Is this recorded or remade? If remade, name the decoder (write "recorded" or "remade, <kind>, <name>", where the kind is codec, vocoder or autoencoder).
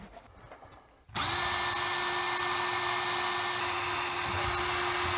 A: recorded